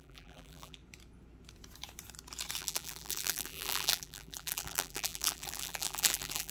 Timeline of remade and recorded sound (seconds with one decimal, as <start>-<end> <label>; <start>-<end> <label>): 0.0-0.8 remade; 0.8-2.6 recorded; 2.6-6.5 remade